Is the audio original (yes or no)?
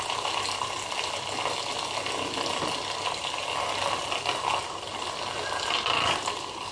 yes